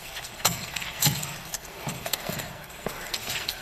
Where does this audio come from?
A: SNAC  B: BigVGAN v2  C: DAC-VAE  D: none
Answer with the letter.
A